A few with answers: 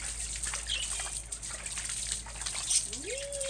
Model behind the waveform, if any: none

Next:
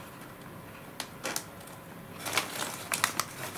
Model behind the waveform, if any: none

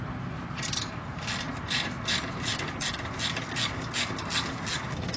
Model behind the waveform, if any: none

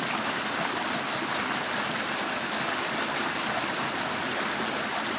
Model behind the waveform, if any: none